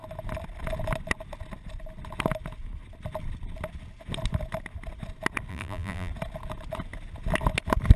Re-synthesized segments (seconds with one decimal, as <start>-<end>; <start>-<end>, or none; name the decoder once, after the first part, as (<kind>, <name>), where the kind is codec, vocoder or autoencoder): 5.5-6.1 (vocoder, BigVGAN v2)